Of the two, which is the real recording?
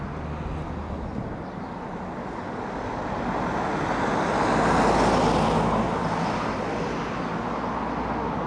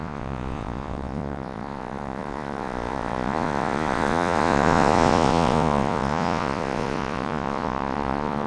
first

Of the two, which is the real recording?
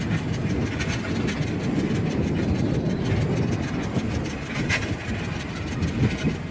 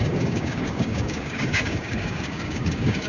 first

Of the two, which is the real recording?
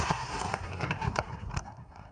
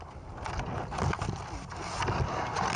second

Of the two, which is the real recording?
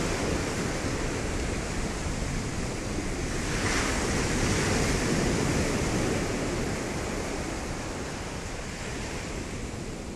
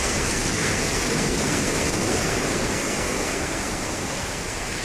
first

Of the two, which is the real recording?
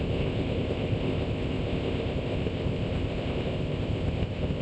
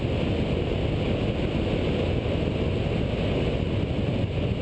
second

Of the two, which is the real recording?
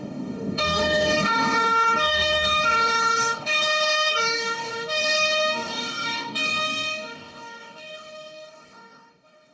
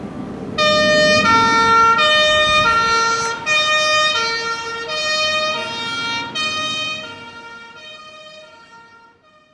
second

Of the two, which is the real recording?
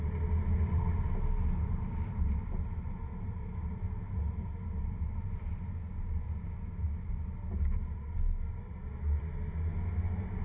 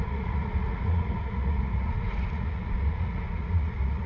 first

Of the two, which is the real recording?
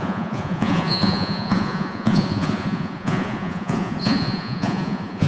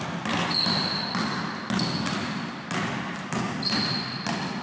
second